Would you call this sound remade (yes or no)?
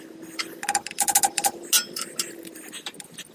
no